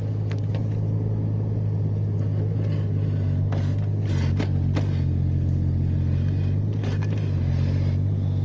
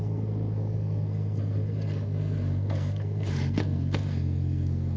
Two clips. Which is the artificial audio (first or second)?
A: second